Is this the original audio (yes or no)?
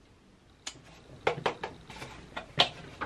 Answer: yes